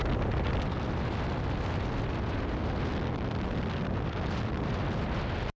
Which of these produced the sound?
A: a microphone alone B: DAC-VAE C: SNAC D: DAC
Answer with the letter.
A